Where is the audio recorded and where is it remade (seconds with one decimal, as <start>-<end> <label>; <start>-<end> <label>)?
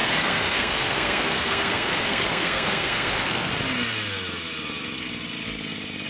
0.0-3.5 remade; 3.5-6.1 recorded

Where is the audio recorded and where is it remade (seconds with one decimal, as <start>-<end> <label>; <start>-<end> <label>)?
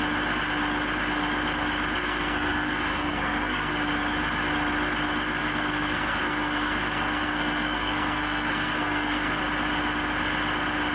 0.0-2.0 recorded; 2.0-3.7 remade; 3.7-5.4 recorded; 5.4-9.4 remade; 9.4-10.9 recorded